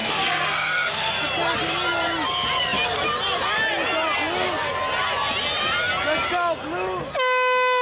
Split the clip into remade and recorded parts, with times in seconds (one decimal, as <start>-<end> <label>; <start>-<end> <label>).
0.0-1.1 remade; 1.1-7.8 recorded